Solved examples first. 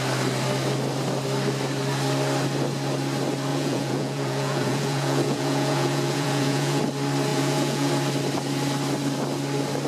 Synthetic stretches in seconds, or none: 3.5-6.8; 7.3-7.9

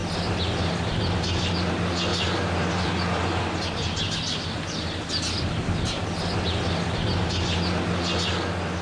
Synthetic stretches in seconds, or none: 2.1-3.2

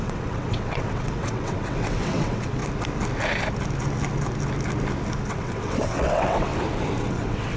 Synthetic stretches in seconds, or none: 0.0-2.6; 5.3-6.5; 7.0-7.6

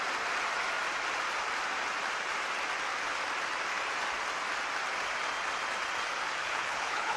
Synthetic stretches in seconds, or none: 6.4-7.2

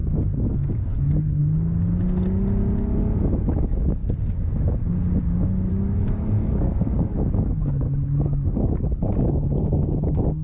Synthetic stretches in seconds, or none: 0.7-1.4; 3.6-4.0; 5.7-10.4

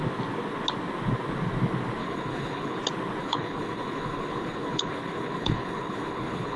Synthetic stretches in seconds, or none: 2.0-2.8; 3.2-6.6